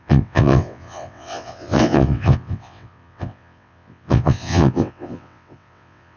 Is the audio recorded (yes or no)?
no